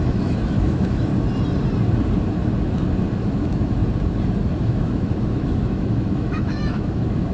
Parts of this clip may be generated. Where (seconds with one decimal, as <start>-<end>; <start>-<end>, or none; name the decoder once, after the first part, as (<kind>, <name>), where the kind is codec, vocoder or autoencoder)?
0.0-1.1 (autoencoder, DAC-VAE); 3.1-3.8; 4.6-7.3